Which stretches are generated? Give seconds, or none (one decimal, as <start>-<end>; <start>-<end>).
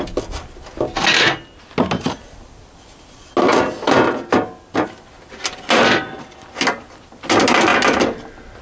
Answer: none